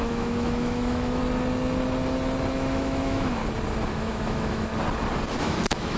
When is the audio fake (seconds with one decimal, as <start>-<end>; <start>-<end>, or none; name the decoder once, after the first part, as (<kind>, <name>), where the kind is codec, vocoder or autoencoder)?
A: 0.0-1.2 (autoencoder, DAC-VAE); 2.5-3.4; 3.9-4.7; 5.4-6.0